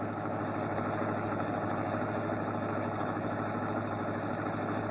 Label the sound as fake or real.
fake